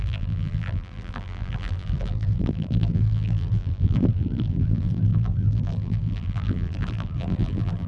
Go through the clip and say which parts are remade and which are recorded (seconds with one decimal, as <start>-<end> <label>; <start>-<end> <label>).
0.0-7.9 remade